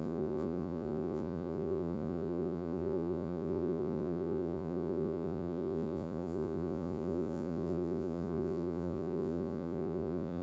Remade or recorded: remade